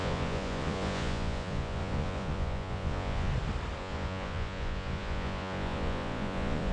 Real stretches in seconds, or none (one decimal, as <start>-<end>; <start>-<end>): 3.3-3.8